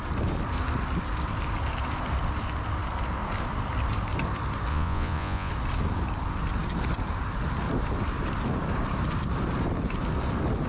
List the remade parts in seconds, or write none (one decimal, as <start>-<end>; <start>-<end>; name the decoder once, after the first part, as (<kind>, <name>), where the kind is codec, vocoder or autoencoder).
4.7-5.5 (vocoder, Vocos)